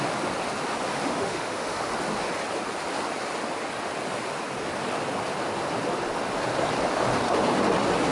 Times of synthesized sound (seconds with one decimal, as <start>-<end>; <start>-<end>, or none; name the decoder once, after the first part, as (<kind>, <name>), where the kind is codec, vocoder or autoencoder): 1.1-1.9 (autoencoder, DAC-VAE)